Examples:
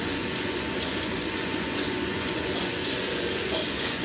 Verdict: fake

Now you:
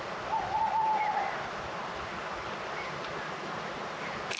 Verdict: real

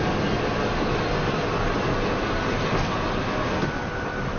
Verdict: real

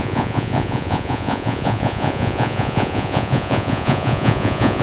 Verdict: fake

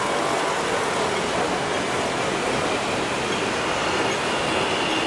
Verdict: real